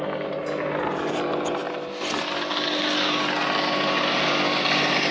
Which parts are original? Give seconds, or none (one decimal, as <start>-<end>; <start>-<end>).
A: 0.0-5.1